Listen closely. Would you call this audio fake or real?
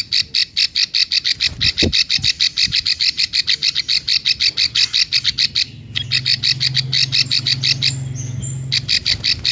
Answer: real